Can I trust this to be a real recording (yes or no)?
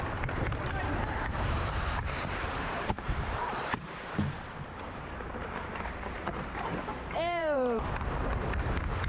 no